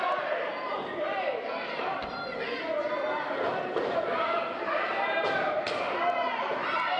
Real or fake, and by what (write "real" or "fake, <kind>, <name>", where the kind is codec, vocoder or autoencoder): fake, vocoder, BigVGAN v2